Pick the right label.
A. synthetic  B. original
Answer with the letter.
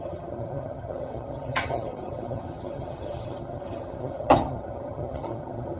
A